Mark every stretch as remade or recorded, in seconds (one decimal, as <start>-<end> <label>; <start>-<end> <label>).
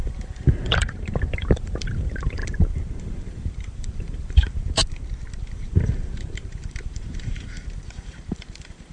0.0-2.4 remade; 2.4-3.0 recorded; 3.0-4.8 remade; 4.8-5.4 recorded; 5.4-8.9 remade